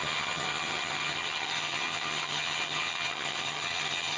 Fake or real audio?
fake